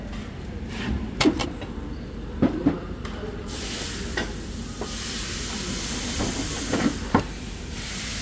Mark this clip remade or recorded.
remade